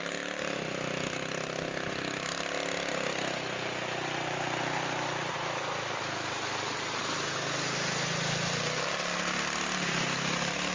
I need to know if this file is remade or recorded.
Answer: recorded